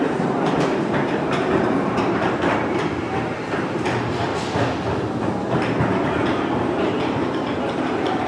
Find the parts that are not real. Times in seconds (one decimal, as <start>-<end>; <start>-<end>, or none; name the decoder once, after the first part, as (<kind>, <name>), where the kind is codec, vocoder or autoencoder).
0.0-4.3 (vocoder, BigVGAN v2); 7.7-8.3